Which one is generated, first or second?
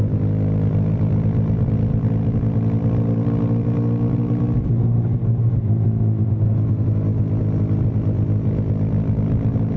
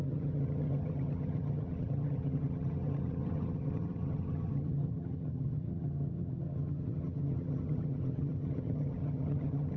second